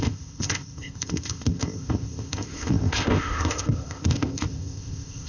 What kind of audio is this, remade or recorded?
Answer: remade